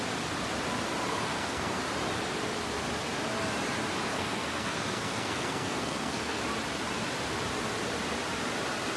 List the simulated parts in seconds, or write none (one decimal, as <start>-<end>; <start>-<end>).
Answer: 1.1-1.8; 4.1-6.4